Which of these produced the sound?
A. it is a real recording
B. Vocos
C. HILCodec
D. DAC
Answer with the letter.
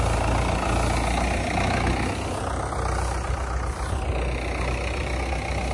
A